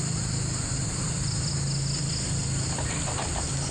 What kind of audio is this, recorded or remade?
recorded